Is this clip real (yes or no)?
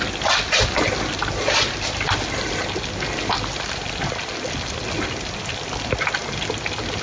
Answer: yes